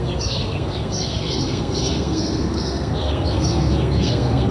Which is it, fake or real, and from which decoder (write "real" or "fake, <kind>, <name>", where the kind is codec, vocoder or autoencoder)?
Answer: fake, codec, SNAC